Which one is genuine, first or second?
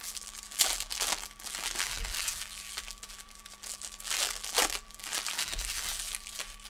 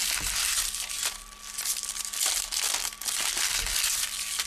second